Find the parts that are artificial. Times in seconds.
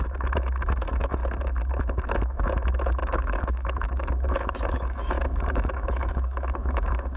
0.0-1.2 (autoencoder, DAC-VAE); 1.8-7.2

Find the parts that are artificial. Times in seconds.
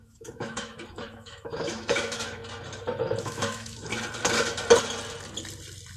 0.0-2.4 (autoencoder, DAC-VAE); 3.2-3.9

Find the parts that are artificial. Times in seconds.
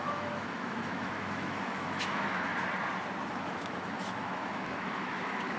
0.0-2.5 (autoencoder, DAC-VAE); 3.3-5.6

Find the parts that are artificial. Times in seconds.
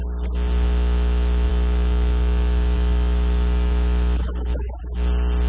1.5-4.8 (autoencoder, DAC-VAE)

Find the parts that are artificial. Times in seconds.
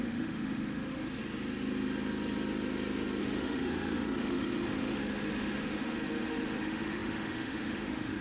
0.0-1.2 (autoencoder, DAC-VAE); 3.2-8.2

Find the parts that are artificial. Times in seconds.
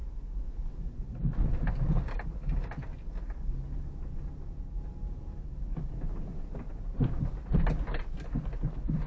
none